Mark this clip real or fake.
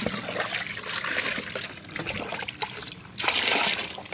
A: real